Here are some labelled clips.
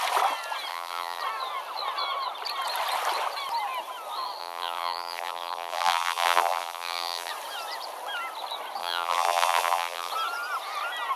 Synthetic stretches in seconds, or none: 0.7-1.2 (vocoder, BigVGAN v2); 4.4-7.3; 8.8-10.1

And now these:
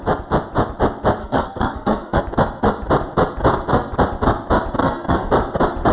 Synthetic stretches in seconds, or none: 1.2-2.2 (codec, SNAC); 4.8-5.3

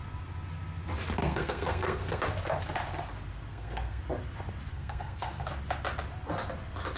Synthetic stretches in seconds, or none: 1.2-2.2 (codec, SNAC); 3.5-4.0; 4.7-5.5

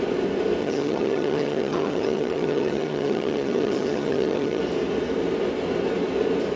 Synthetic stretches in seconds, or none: 0.6-4.6 (vocoder, HiFi-GAN)

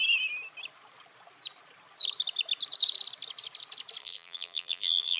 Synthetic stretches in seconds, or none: 4.0-5.2 (vocoder, BigVGAN v2)

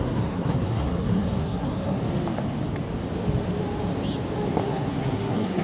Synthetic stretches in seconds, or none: 0.0-2.0 (codec, SNAC); 4.6-5.6

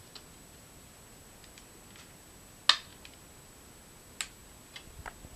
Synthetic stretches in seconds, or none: none

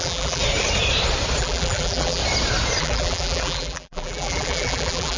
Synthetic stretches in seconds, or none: 0.0-0.4 (vocoder, BigVGAN v2); 1.4-2.2; 2.8-5.2